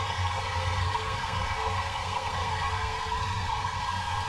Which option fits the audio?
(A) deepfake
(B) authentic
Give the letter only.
A